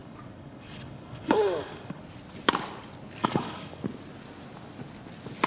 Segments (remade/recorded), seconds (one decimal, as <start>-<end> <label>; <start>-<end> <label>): 0.0-2.0 remade; 2.0-3.2 recorded; 3.2-3.8 remade; 3.8-5.5 recorded